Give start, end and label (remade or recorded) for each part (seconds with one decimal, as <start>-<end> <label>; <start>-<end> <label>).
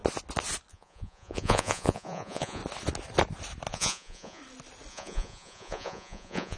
0.0-0.7 recorded; 0.7-2.6 remade; 2.6-3.7 recorded; 3.7-4.4 remade; 4.4-4.9 recorded; 4.9-6.6 remade